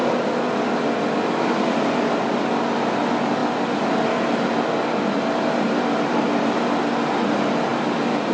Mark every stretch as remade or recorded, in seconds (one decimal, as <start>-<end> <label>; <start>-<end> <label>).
0.0-2.2 remade; 2.2-3.4 recorded; 3.4-6.6 remade; 6.6-8.3 recorded